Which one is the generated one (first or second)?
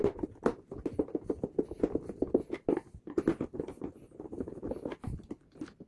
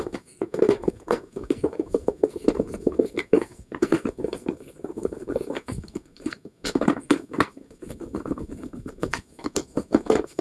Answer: second